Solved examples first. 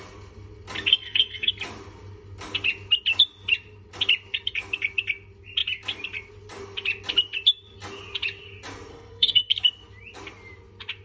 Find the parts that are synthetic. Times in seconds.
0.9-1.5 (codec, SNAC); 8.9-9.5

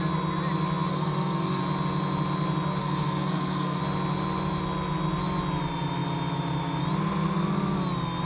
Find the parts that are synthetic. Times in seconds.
0.9-1.6 (codec, SNAC); 2.8-3.8

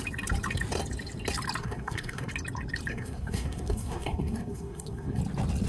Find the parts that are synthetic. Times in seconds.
1.6-2.3 (codec, SNAC); 2.9-5.2

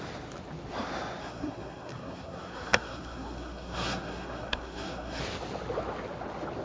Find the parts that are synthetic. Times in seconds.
1.2-5.2 (codec, SNAC)

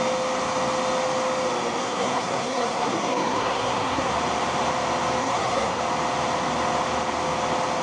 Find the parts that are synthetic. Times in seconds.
1.8-4.1 (codec, SNAC); 5.2-5.8

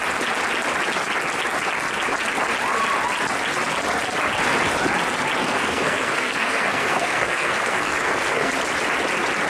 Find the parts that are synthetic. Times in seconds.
5.4-8.5 (codec, SNAC)

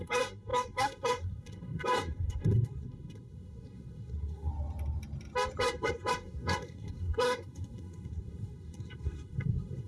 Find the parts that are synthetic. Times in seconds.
0.0-4.5 (codec, SNAC); 5.6-9.9